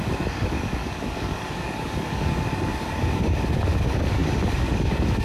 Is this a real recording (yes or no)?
no